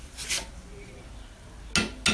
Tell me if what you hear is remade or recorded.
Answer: recorded